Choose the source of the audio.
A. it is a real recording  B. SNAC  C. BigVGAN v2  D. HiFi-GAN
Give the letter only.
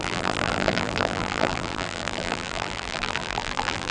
C